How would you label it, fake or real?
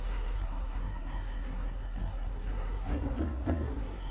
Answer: fake